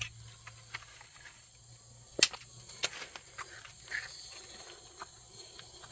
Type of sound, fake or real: real